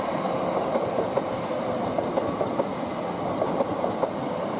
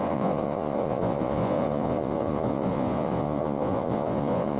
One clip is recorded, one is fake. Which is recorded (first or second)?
first